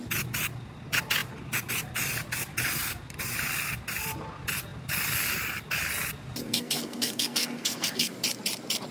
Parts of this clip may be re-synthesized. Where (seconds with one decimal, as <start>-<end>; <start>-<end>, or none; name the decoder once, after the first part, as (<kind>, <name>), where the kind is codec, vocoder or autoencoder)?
6.4-8.1 (codec, SNAC)